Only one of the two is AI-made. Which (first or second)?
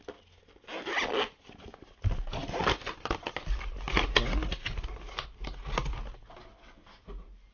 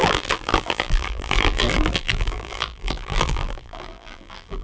second